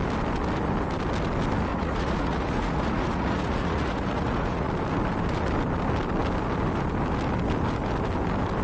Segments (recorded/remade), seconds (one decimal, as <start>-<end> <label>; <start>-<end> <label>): 0.0-1.7 recorded; 1.7-4.7 remade; 4.7-8.6 recorded